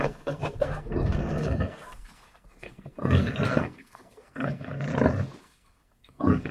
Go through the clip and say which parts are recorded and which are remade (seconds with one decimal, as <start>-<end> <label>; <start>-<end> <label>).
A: 0.0-4.9 remade; 4.9-5.4 recorded; 5.4-6.5 remade